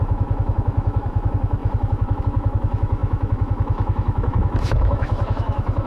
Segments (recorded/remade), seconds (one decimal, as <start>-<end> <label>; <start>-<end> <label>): 0.0-5.9 remade